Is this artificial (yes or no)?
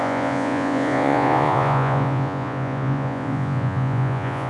yes